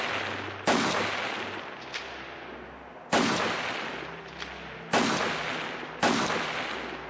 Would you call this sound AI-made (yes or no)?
no